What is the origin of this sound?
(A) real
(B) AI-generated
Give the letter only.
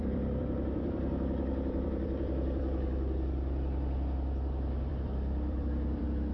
B